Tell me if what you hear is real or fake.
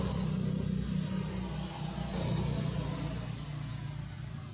real